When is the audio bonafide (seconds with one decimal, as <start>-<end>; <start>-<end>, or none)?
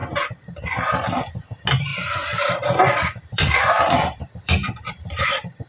0.0-1.9; 5.3-5.7